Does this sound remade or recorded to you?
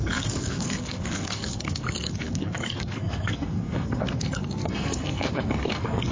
remade